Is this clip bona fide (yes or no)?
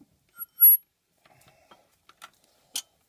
yes